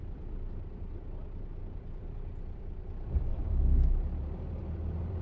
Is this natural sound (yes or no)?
no